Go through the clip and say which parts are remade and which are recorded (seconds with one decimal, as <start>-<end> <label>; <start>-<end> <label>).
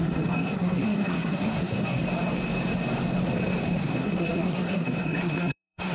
0.0-2.0 remade; 2.0-3.8 recorded; 3.8-5.9 remade